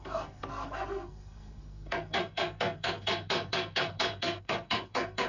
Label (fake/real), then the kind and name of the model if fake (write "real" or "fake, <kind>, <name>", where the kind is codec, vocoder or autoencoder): fake, codec, SNAC